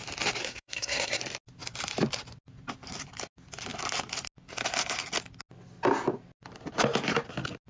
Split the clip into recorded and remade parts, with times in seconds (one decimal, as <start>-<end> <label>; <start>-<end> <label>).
0.0-0.4 recorded; 0.4-1.2 remade; 1.2-7.7 recorded